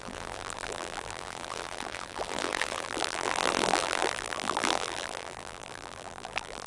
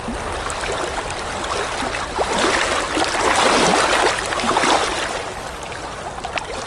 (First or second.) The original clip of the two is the second